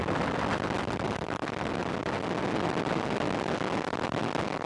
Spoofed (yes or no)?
no